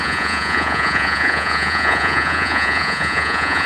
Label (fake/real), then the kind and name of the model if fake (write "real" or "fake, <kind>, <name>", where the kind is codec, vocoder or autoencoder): fake, vocoder, Vocos